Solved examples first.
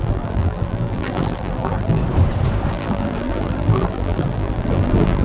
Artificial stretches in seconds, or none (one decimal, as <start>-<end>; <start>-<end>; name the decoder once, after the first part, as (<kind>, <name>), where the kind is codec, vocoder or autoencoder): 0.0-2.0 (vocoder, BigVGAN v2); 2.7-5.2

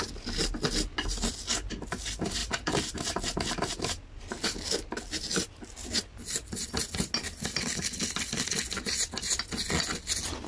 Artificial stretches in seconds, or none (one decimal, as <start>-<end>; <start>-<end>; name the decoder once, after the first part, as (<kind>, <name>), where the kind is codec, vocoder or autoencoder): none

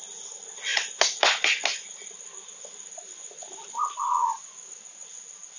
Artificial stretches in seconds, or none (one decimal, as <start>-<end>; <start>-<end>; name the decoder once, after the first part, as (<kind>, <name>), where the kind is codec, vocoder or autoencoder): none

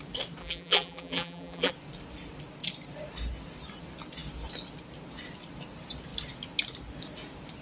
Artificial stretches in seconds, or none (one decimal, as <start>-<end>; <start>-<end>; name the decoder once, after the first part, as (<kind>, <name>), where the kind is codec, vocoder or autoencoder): 0.4-1.7 (vocoder, BigVGAN v2)

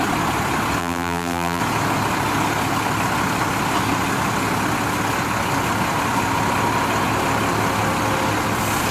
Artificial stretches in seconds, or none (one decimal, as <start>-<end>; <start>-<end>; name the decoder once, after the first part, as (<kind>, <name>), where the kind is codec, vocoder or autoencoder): 0.8-1.6 (vocoder, BigVGAN v2)